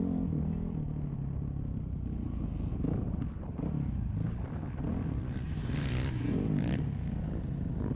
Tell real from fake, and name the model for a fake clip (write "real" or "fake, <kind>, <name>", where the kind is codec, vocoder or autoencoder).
real